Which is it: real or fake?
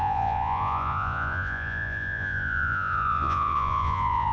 fake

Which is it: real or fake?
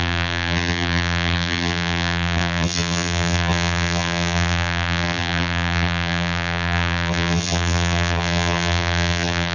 fake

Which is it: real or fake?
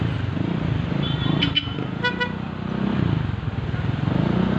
real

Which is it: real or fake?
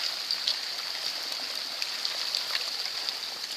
real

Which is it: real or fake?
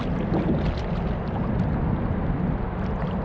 real